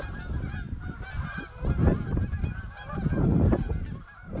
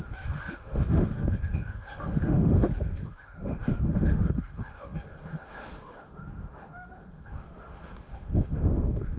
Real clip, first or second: first